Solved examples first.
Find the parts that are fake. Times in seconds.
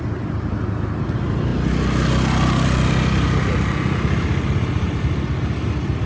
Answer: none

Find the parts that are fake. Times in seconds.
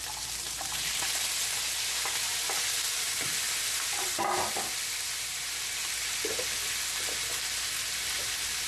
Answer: none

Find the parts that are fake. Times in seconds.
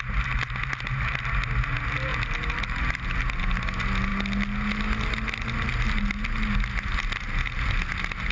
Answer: none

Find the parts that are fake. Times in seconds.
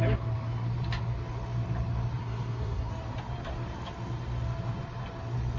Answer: 2.2-2.9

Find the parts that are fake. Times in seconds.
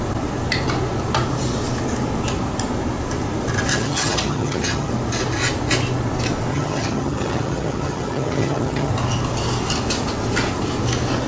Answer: 3.7-4.9; 6.5-8.9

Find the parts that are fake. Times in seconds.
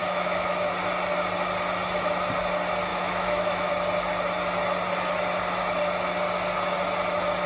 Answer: 0.0-0.7; 2.9-3.7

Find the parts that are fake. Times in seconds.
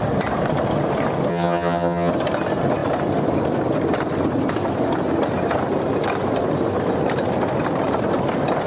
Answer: 1.3-2.1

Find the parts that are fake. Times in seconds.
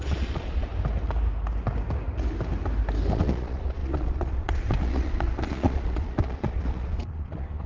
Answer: 0.0-0.7; 3.1-7.7